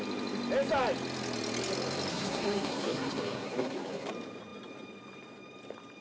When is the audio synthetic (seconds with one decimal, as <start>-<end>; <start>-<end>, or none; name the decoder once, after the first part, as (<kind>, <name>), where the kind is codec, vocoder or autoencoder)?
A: 2.1-4.1 (codec, SNAC)